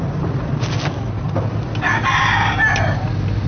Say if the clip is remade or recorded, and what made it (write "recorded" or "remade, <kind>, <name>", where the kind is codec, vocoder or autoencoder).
recorded